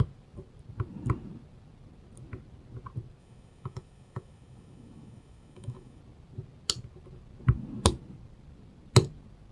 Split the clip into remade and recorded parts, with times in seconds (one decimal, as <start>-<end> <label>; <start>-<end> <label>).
0.0-3.2 recorded; 3.2-6.0 remade; 6.0-9.5 recorded